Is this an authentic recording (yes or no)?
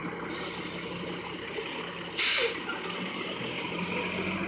yes